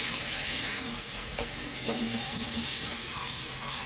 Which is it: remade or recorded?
remade